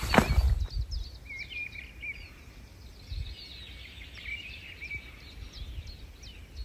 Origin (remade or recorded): recorded